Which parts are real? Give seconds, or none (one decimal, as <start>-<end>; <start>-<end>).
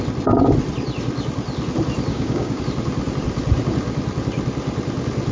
0.0-2.1; 2.6-5.3